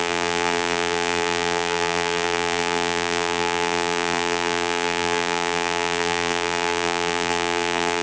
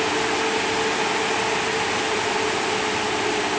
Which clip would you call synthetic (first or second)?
first